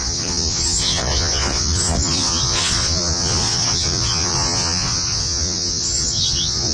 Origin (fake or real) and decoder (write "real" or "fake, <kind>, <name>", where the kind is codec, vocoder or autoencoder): fake, vocoder, Vocos